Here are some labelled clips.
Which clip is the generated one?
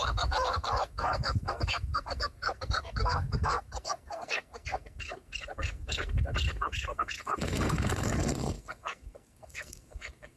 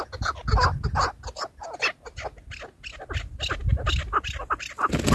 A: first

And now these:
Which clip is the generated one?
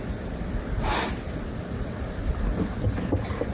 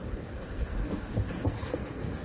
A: second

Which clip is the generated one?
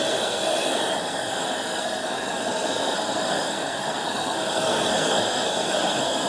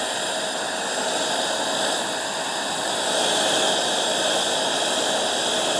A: first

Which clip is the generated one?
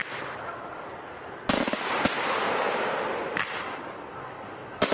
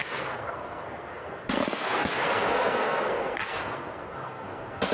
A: second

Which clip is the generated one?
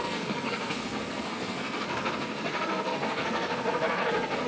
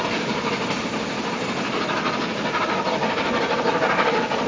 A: first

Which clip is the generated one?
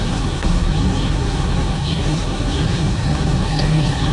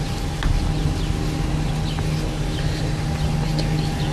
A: first